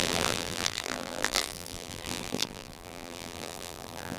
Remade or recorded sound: remade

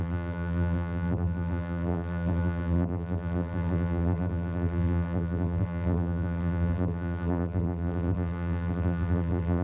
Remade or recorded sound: remade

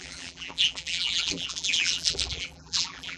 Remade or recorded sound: remade